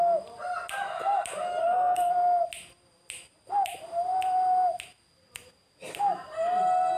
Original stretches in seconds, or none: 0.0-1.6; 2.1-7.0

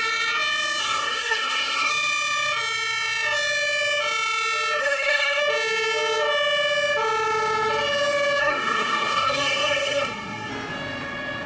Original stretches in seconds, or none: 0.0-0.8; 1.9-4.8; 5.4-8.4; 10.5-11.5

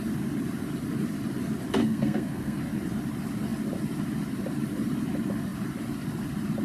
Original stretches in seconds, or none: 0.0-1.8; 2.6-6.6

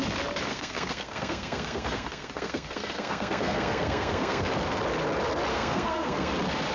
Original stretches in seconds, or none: 0.0-0.5; 4.5-5.5; 6.3-6.7

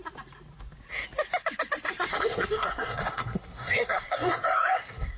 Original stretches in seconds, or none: 0.0-2.1